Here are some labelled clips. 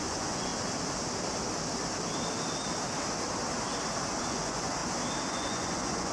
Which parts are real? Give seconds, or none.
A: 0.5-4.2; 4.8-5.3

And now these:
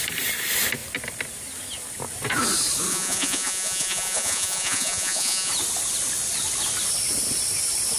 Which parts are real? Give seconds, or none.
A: 0.0-2.9; 5.5-8.0

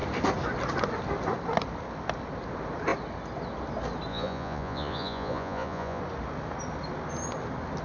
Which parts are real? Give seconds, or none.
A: 0.0-4.1; 6.0-7.8

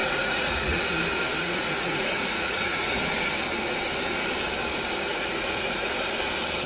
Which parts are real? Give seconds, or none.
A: 0.8-1.4; 3.0-5.1; 5.9-6.7

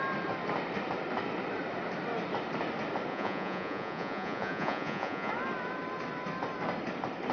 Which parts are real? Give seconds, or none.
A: 0.0-3.1; 5.3-7.3

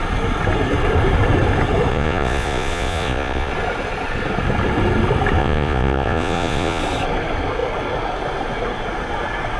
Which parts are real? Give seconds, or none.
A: 0.0-1.9; 3.5-5.4; 6.8-9.6

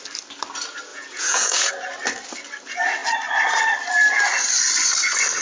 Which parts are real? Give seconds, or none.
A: 0.0-0.9; 1.7-5.4